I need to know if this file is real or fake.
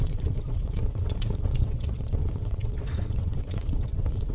fake